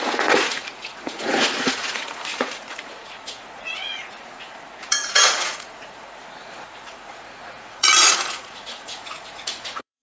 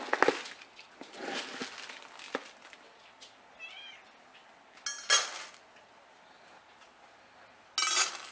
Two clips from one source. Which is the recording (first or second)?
second